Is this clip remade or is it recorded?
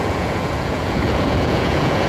remade